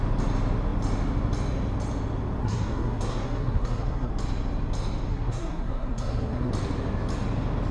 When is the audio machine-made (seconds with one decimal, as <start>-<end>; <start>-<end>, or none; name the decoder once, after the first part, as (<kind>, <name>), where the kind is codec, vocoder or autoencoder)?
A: 2.4-4.1 (codec, SNAC); 5.1-6.5